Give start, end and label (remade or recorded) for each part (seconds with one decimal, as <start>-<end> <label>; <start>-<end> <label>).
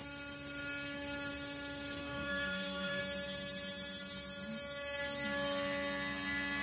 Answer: 0.0-2.0 recorded; 2.0-3.0 remade; 3.0-6.6 recorded